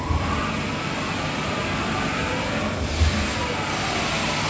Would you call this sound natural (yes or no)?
yes